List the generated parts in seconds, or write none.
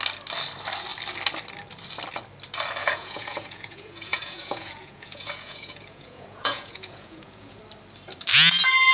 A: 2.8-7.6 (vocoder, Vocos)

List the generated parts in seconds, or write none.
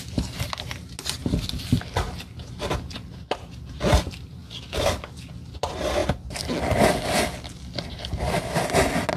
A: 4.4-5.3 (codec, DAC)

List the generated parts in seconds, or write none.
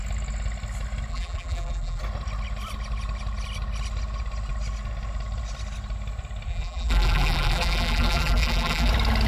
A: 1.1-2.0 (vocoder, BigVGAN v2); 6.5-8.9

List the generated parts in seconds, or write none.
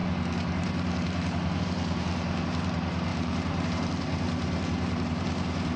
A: 0.0-5.8 (vocoder, BigVGAN v2)